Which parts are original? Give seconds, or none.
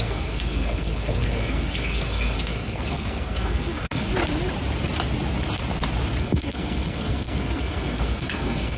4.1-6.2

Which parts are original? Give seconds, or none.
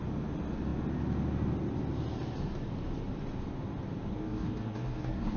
0.0-4.1